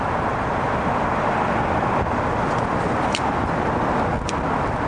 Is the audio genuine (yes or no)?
yes